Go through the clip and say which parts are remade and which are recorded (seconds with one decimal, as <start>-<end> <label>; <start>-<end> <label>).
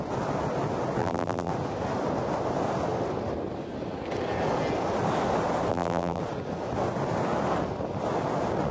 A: 0.0-1.0 recorded; 1.0-1.5 remade; 1.5-5.7 recorded; 5.7-6.2 remade; 6.2-8.7 recorded